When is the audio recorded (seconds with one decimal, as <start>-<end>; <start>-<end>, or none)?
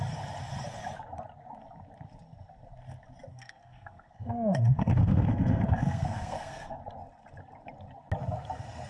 0.0-3.3; 6.8-8.9